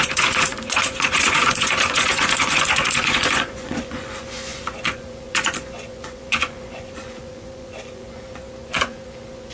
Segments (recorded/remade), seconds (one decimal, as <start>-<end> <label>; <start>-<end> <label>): 0.0-9.5 remade